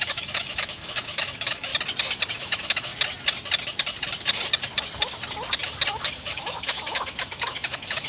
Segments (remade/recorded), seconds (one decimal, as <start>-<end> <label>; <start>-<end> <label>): 0.0-1.7 remade; 1.7-2.3 recorded; 2.3-2.9 remade; 2.9-5.9 recorded; 5.9-8.1 remade